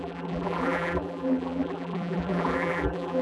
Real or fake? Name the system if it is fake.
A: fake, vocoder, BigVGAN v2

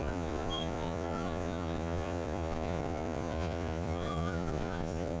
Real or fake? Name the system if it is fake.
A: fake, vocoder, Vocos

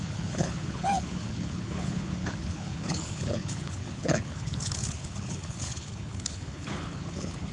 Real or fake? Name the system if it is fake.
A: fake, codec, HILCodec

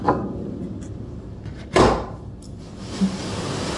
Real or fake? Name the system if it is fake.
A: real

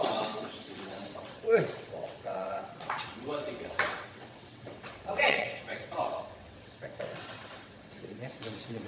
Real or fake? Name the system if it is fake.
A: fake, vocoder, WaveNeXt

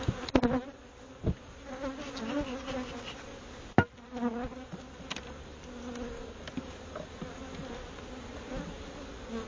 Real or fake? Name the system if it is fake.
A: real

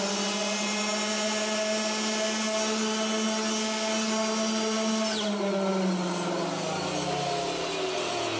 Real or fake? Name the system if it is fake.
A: real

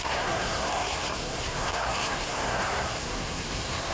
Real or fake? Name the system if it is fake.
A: fake, codec, SNAC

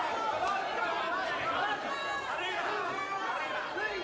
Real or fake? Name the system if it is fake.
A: real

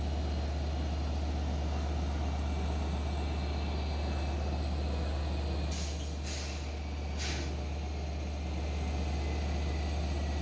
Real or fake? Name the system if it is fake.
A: real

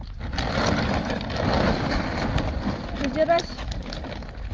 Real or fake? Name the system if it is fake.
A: real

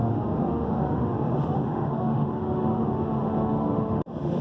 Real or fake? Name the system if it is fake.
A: fake, autoencoder, DAC-VAE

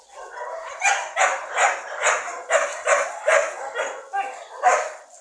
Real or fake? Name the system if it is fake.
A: real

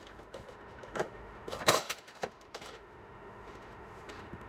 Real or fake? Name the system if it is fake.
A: fake, autoencoder, DAC-VAE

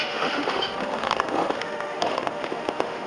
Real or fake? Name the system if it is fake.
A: fake, autoencoder, DAC-VAE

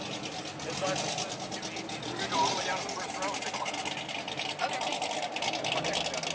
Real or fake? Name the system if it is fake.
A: real